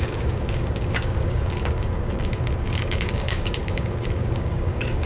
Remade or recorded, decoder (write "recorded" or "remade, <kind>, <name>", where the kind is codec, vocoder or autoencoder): remade, codec, DAC